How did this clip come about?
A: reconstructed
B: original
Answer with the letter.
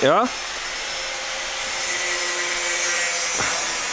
B